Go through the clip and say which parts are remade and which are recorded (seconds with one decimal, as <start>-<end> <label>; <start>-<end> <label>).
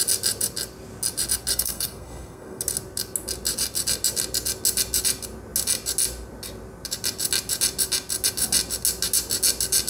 0.0-1.5 recorded; 1.5-2.6 remade; 2.6-9.9 recorded